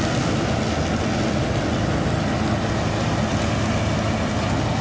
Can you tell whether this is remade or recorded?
recorded